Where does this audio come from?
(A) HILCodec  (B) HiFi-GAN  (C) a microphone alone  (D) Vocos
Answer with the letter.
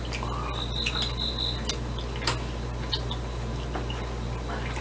C